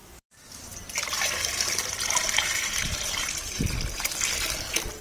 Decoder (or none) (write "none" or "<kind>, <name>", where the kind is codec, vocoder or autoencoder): vocoder, BigVGAN v2